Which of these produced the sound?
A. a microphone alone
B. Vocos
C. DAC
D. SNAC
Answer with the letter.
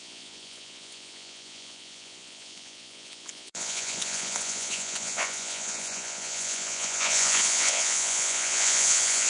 B